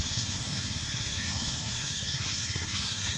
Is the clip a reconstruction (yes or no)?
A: yes